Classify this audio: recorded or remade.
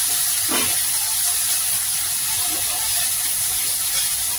recorded